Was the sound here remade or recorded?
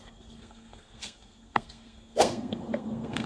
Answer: remade